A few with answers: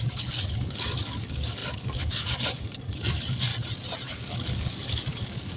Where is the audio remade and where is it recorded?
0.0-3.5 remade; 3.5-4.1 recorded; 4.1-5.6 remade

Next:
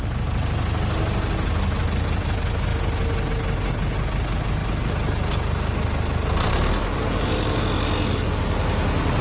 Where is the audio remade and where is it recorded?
0.0-6.8 recorded; 6.8-7.6 remade; 7.6-9.2 recorded

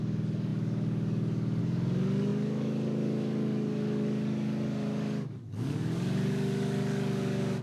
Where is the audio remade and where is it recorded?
0.0-7.6 remade

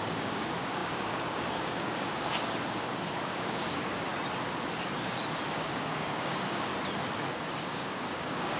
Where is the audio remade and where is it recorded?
0.0-4.1 remade; 4.1-5.5 recorded; 5.5-6.7 remade; 6.7-7.6 recorded; 7.6-8.6 remade

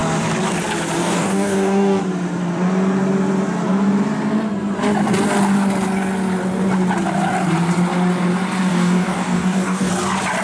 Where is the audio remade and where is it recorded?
0.0-1.0 recorded; 1.0-2.0 remade; 2.0-8.7 recorded; 8.7-9.9 remade; 9.9-10.4 recorded

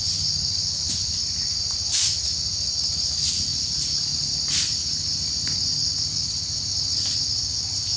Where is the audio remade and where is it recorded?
0.0-8.0 recorded